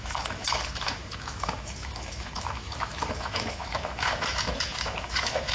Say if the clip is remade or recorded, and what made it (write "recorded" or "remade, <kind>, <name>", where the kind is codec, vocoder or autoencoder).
remade, autoencoder, DAC-VAE